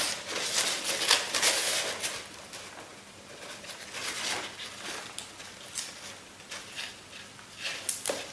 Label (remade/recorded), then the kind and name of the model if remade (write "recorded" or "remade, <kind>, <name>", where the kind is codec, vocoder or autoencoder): recorded